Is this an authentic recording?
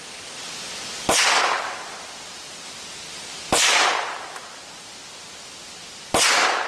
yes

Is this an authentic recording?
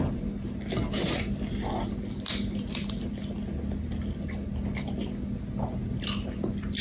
yes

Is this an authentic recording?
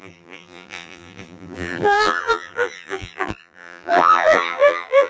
no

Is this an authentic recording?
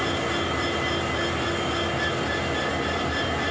yes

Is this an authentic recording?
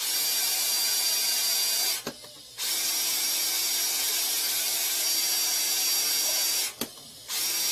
yes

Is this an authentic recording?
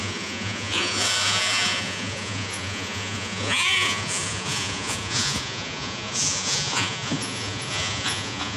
no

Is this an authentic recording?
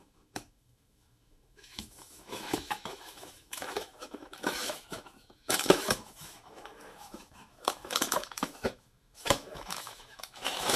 no